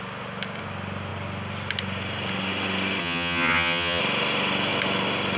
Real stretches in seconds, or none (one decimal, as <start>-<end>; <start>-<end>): 0.0-3.0; 4.0-5.4